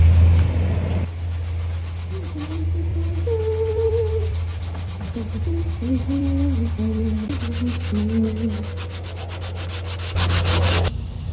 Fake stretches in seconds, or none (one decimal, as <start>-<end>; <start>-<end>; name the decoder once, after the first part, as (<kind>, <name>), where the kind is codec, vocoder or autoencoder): 2.9-7.4 (vocoder, BigVGAN v2)